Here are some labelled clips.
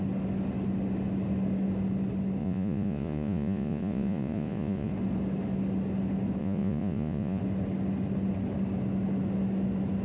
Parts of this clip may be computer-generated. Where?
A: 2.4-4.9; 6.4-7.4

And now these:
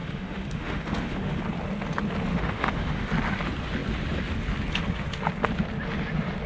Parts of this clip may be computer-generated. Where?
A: 0.0-1.4; 2.3-3.1

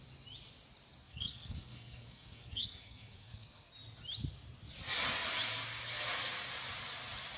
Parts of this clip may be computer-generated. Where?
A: 1.0-3.7

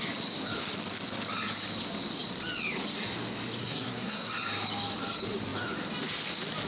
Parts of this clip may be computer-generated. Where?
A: 3.6-4.3

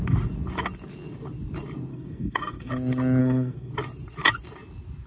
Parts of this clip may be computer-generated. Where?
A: 1.9-2.7; 3.2-3.7

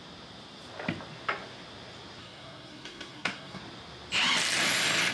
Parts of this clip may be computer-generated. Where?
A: 2.2-3.6

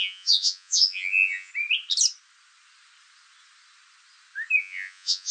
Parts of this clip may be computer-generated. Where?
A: 0.0-1.5; 4.6-5.3